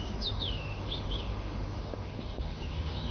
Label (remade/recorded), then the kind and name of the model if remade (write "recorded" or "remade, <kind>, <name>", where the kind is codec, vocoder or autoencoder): remade, autoencoder, DAC-VAE